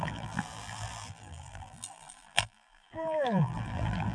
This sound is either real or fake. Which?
fake